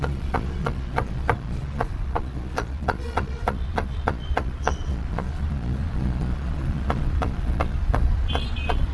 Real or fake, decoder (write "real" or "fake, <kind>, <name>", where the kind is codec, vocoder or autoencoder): fake, vocoder, Vocos